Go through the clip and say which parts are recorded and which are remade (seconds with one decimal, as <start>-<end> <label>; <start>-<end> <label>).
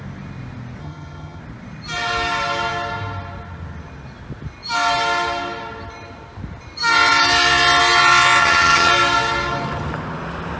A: 0.0-0.8 recorded; 0.8-1.4 remade; 1.4-8.4 recorded; 8.4-8.9 remade; 8.9-10.6 recorded